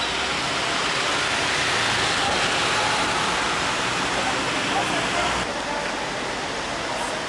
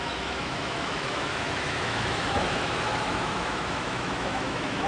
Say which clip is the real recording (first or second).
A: first